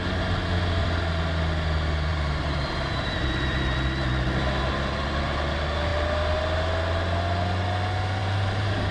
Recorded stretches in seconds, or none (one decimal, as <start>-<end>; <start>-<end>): 0.0-2.1; 3.1-8.2